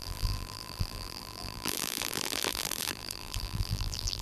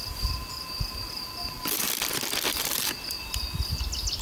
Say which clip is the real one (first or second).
second